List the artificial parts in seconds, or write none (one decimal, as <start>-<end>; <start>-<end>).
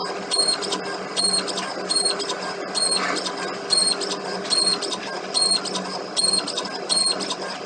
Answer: none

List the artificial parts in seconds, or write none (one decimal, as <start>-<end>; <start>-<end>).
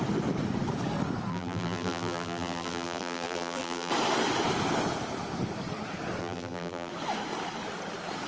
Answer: 1.3-3.9; 6.2-6.9